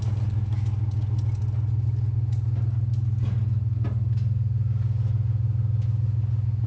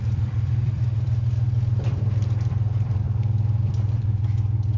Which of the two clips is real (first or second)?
first